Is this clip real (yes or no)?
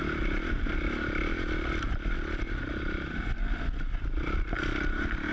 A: yes